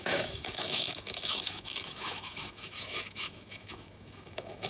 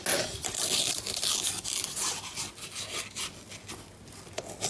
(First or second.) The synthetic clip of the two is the first